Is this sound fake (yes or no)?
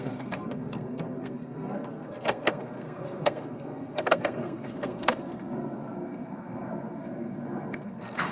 yes